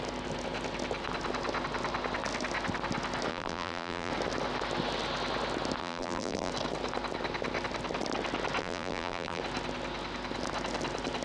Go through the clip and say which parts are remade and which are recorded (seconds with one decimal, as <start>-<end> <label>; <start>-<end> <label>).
0.0-3.3 recorded; 3.3-4.1 remade; 4.1-5.8 recorded; 5.8-6.5 remade; 6.5-8.6 recorded; 8.6-9.4 remade; 9.4-11.2 recorded